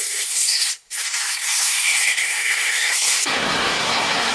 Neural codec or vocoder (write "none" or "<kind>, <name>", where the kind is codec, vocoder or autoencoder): codec, SNAC